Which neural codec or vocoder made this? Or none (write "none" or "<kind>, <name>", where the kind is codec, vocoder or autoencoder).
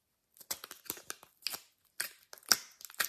none